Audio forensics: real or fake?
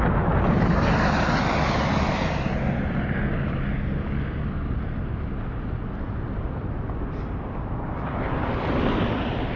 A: real